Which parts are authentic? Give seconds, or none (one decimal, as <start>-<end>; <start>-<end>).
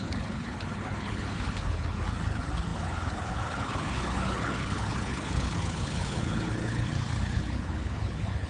none